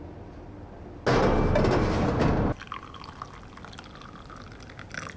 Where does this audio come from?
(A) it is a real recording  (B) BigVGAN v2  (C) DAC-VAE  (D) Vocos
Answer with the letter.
A